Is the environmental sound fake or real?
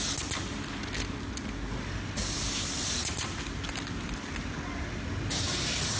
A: real